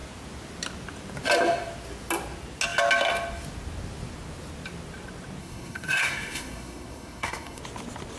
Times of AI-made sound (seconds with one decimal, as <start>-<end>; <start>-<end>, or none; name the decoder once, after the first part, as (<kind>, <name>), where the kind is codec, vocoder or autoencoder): 5.4-7.6 (codec, SNAC)